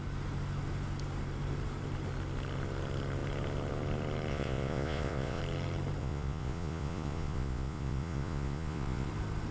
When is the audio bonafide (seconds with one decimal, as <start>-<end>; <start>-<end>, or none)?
0.0-4.3; 5.4-6.0; 9.1-9.5